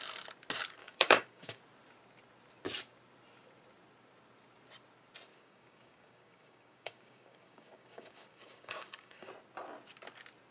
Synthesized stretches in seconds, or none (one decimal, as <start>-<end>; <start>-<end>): 0.8-1.6; 5.3-9.3